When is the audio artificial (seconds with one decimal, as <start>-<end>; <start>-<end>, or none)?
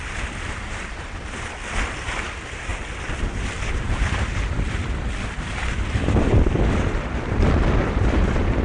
0.0-8.6